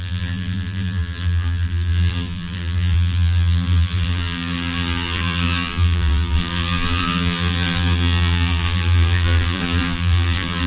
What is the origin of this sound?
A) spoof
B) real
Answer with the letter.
A